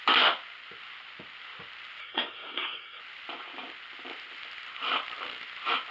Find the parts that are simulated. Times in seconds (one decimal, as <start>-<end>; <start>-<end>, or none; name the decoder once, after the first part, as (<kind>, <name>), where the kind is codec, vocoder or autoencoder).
2.0-3.0 (codec, SNAC)